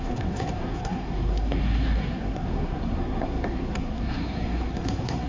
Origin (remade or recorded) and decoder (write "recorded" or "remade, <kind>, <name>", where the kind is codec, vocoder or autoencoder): remade, codec, SNAC